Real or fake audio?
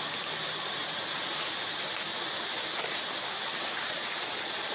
real